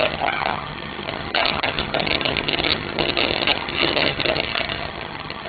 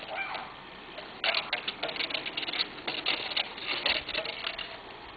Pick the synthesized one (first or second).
first